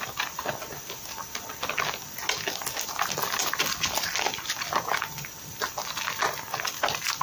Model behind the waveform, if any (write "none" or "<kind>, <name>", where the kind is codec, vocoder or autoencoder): none